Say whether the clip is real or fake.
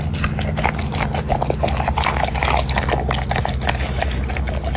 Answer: real